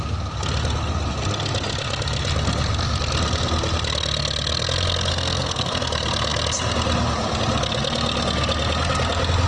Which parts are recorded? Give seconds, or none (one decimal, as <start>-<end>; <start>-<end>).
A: 0.0-5.1; 5.7-9.5